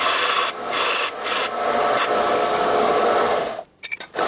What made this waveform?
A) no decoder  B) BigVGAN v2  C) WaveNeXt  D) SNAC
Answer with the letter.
A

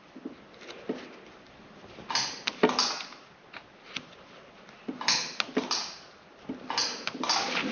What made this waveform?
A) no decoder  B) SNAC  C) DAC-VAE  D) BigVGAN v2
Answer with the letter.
A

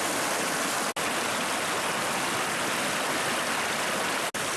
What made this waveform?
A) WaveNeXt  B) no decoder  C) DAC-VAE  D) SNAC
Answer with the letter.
B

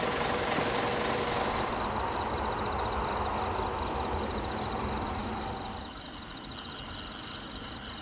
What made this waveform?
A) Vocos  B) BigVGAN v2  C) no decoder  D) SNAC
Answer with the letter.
C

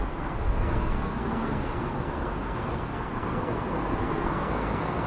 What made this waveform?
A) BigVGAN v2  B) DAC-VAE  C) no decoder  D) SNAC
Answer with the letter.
D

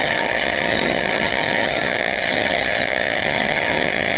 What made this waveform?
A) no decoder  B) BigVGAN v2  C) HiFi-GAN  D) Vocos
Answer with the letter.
C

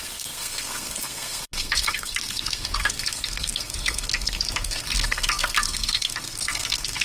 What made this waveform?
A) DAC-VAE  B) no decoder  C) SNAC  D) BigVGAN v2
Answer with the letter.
C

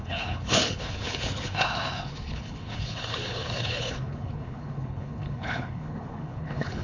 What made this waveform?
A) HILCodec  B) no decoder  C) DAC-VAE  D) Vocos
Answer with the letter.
A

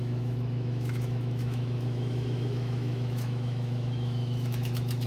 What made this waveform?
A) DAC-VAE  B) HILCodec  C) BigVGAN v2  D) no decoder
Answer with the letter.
A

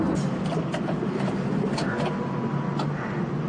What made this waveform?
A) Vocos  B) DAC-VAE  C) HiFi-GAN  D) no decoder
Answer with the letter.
D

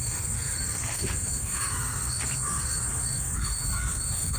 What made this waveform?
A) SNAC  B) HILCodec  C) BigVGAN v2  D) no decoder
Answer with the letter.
A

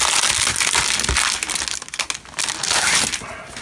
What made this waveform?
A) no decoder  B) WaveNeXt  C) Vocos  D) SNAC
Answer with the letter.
A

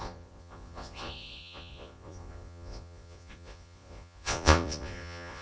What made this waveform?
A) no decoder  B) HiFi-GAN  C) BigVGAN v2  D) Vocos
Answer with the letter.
D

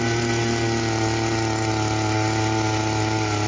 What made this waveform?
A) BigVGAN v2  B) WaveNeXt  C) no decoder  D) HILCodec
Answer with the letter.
C